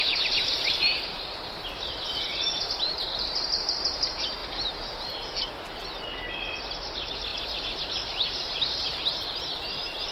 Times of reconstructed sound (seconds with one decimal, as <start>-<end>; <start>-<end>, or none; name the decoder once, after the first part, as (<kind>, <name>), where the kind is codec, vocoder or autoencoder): 0.0-4.4 (vocoder, BigVGAN v2); 6.6-10.1